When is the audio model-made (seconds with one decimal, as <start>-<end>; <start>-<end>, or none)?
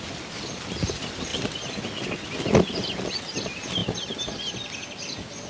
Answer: none